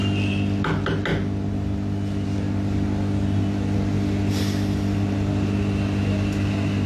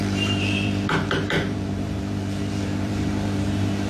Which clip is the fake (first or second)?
second